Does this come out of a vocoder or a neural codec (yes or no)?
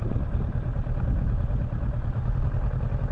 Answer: no